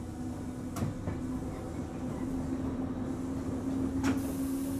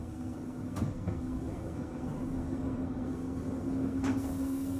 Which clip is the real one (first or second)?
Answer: first